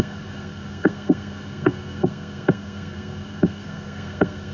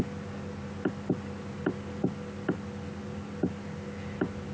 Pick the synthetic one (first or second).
first